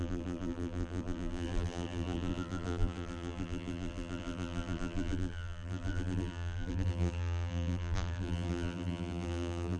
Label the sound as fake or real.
fake